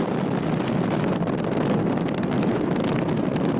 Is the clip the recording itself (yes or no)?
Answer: yes